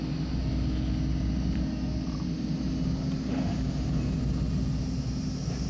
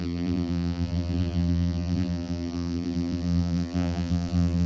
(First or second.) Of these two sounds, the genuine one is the first